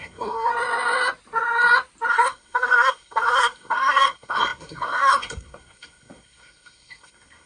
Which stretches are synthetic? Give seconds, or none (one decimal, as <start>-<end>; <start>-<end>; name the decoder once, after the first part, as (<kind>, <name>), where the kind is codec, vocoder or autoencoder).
0.0-0.5 (codec, SNAC); 2.1-7.5